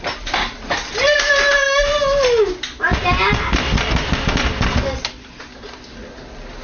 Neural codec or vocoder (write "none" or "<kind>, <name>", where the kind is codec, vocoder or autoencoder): none